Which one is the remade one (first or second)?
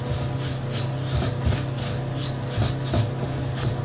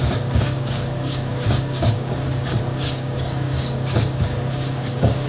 second